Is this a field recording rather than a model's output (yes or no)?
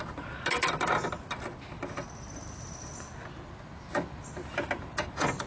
yes